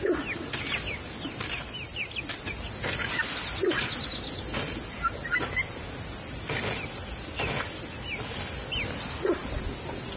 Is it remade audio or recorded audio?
recorded